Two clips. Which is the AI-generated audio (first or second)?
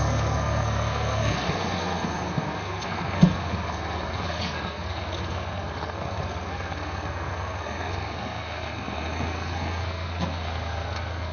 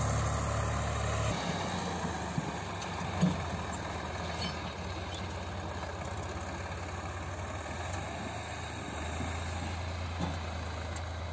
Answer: first